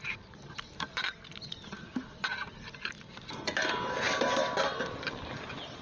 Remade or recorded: remade